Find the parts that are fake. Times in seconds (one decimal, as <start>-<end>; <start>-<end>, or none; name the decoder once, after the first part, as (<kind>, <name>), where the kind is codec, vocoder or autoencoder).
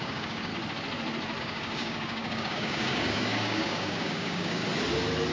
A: 0.0-0.5 (codec, DAC); 1.4-4.6